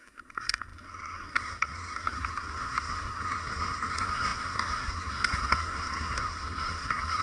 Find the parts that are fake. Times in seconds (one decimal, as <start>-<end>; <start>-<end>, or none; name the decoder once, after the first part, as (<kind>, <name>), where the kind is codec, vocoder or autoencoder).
0.0-7.2 (codec, SNAC)